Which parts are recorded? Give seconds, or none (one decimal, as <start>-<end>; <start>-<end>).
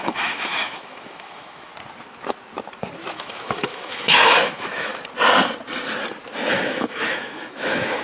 1.7-3.1; 4.9-6.5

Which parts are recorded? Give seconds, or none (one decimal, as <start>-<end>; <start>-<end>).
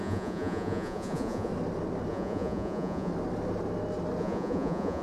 1.5-2.1; 3.1-4.2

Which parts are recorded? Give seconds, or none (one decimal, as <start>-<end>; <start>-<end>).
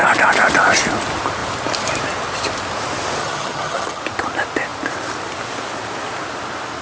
0.0-3.2; 4.0-6.8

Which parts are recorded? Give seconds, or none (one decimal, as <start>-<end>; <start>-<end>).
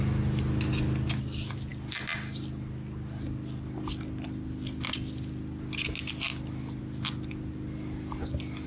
0.0-8.7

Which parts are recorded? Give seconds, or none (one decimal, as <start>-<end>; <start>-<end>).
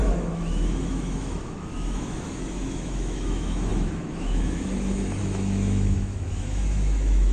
none